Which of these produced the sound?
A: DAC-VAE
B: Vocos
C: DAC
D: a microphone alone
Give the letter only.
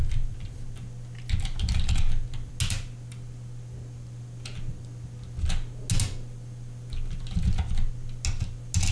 D